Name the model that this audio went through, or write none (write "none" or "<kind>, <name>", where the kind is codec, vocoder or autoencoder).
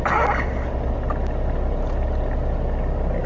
none